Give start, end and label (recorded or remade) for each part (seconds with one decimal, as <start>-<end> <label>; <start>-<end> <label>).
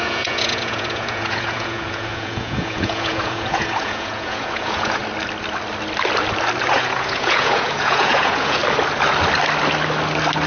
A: 0.0-5.0 remade; 5.0-6.7 recorded; 6.7-8.6 remade; 8.6-10.5 recorded